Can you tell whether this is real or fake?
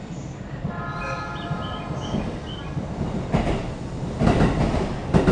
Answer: real